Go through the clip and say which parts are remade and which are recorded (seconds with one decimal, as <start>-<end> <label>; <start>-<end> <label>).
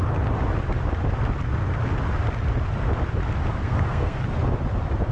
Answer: 0.0-3.6 recorded; 3.6-4.2 remade; 4.2-5.1 recorded